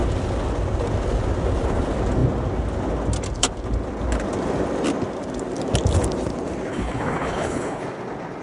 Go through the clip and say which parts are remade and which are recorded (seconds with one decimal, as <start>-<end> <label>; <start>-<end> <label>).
0.0-6.7 recorded; 6.7-7.8 remade; 7.8-8.4 recorded